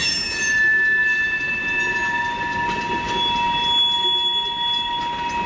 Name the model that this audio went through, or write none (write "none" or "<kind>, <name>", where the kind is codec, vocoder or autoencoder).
none